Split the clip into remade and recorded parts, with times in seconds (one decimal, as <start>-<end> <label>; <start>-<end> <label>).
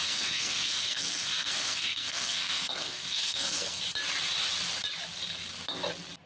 0.0-3.8 remade; 3.8-6.3 recorded